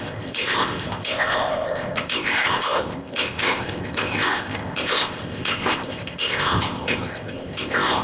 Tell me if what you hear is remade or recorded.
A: remade